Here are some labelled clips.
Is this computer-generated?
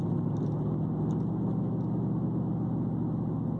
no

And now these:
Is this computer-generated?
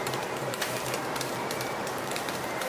yes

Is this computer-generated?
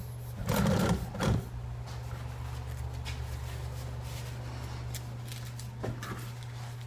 no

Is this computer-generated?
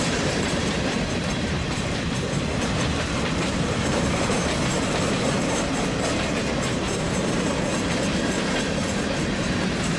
yes